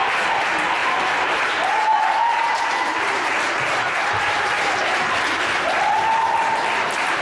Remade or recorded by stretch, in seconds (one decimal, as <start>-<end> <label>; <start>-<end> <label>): 0.0-0.8 recorded; 0.8-5.1 remade; 5.1-7.2 recorded